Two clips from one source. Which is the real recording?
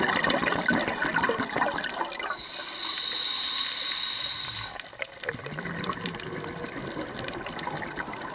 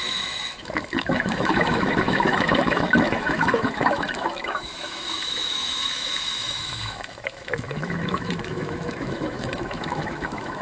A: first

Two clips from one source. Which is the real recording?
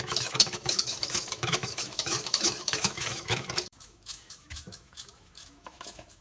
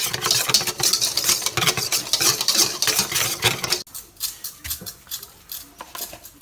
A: second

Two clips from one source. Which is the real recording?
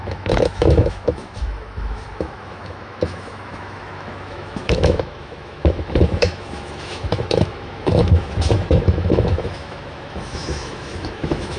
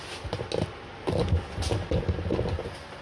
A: second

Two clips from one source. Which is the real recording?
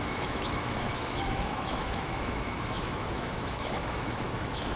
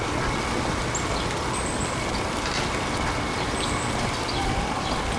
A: second